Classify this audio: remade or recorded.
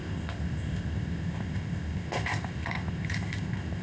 remade